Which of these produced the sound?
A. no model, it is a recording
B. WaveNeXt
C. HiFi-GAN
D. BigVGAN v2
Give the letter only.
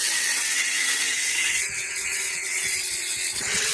B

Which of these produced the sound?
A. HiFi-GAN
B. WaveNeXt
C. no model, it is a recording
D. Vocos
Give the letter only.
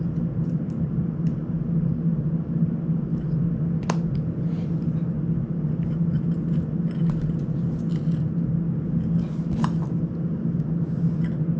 C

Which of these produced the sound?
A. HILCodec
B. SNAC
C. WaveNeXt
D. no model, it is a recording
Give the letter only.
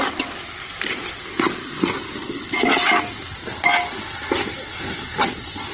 D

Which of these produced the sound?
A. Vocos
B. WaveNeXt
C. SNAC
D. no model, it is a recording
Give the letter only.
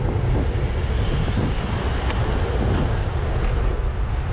D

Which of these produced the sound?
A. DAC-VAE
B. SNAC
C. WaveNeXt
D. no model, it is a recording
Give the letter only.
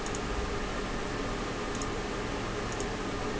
D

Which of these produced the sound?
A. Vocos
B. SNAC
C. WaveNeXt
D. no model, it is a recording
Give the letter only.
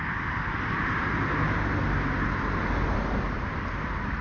D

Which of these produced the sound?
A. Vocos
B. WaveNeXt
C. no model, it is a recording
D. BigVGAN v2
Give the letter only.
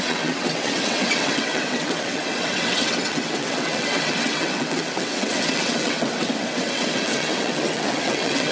B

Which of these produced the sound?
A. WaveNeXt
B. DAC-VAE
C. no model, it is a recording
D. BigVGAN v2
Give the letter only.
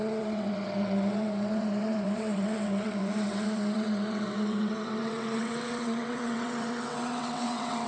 A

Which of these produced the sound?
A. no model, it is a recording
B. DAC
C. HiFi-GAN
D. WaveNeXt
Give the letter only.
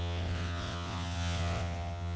D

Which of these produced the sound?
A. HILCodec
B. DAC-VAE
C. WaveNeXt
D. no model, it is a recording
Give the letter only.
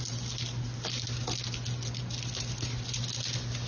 D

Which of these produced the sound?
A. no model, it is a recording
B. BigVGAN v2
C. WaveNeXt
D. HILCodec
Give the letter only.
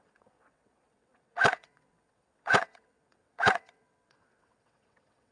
C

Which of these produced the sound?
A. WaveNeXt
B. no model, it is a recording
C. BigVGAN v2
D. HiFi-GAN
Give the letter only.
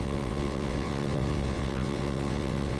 A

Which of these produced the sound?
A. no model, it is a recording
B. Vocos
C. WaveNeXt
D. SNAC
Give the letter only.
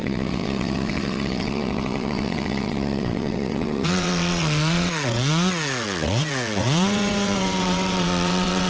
C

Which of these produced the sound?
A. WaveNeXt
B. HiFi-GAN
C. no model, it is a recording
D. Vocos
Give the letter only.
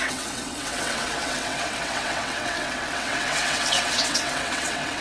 A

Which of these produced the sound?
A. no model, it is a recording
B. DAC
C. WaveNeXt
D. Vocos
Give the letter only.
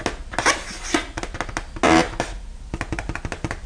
A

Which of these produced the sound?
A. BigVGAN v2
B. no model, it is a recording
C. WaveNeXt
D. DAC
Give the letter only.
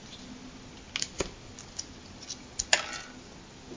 B